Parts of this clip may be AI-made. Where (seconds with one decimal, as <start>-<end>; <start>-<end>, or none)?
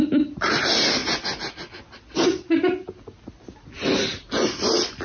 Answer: none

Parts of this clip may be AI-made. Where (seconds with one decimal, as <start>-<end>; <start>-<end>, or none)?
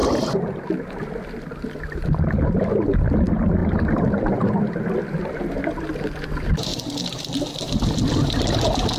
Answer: 0.9-6.7